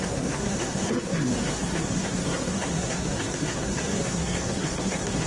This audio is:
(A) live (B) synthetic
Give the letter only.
B